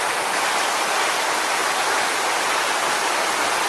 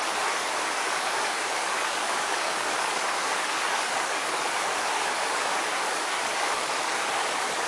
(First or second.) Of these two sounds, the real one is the first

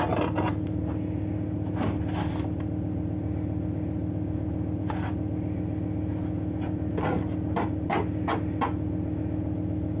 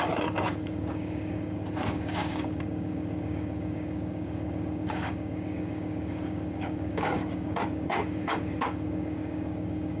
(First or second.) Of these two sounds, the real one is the first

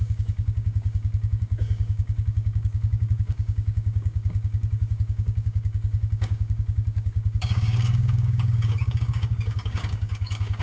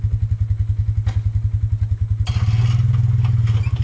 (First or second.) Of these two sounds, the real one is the second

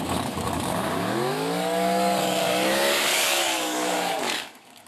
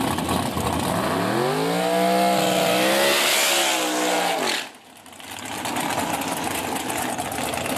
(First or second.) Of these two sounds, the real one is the second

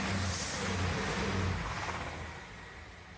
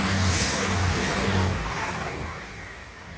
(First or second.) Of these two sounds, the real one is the first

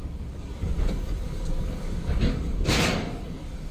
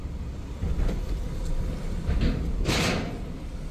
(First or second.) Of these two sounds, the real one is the second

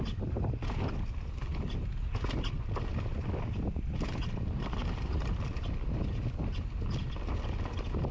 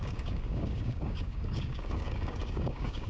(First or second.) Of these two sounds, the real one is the first